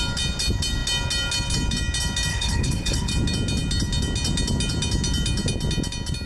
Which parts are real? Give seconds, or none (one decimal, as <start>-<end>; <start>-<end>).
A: 0.0-2.3; 3.1-6.3